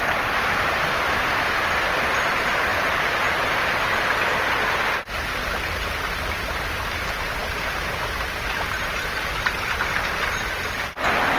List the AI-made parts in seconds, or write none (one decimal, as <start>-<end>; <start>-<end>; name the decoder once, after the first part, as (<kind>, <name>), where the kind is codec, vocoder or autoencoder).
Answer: none